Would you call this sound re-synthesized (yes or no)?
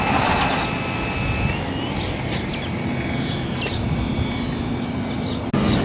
no